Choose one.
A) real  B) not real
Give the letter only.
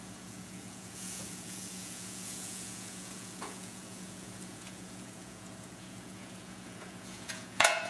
B